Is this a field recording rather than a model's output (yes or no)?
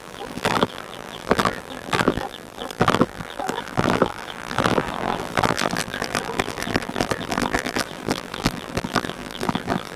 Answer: no